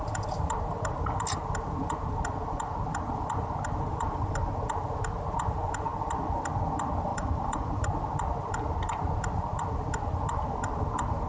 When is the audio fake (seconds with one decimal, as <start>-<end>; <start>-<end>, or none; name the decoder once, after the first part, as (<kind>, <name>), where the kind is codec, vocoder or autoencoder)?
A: 3.9-4.5 (vocoder, BigVGAN v2); 7.1-7.8